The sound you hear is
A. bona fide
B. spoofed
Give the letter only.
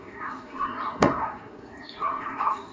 B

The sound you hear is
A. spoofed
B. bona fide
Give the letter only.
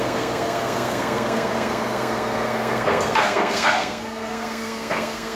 A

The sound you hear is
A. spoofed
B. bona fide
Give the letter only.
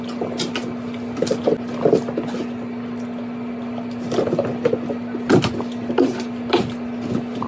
B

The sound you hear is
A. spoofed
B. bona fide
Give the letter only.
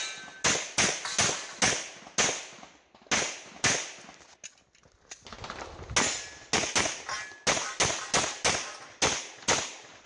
B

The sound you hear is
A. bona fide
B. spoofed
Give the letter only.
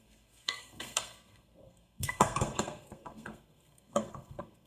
B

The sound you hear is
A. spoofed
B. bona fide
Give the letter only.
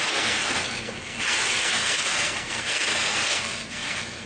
A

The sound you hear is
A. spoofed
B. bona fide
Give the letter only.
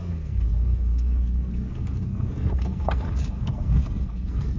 A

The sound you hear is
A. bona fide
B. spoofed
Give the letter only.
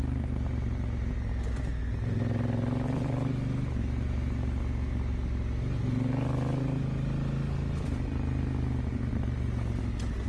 A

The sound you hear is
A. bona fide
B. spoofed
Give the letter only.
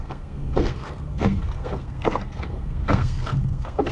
B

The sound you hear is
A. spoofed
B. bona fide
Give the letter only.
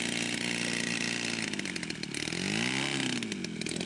B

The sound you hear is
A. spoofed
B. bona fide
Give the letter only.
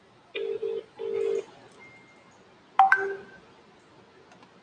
B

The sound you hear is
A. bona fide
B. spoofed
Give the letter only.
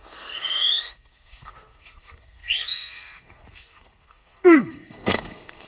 B